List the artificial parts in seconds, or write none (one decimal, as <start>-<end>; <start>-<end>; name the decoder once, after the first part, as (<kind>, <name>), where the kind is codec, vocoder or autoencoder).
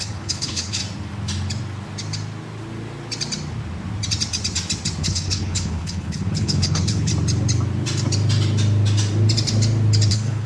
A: 0.0-0.8 (codec, HILCodec); 5.0-7.1; 10.1-10.5